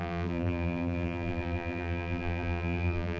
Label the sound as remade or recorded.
remade